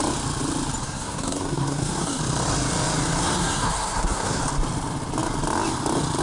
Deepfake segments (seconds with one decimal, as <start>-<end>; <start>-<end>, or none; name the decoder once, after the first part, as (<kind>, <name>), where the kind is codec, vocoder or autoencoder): 0.8-2.2 (codec, SNAC); 3.2-4.4